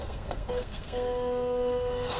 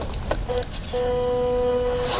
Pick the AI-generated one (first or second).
first